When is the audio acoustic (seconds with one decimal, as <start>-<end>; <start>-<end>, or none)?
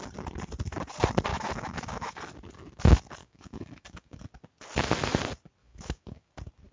0.0-1.3; 2.2-3.2; 4.2-5.6; 6.3-6.7